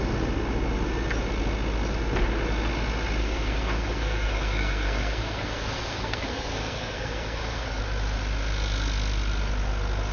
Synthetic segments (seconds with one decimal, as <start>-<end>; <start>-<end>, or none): 3.2-7.8